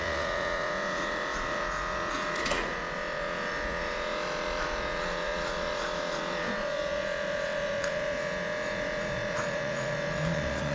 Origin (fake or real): fake